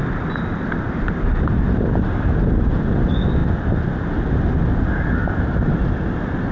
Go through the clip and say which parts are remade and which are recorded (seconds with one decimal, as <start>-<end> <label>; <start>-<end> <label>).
0.0-6.5 recorded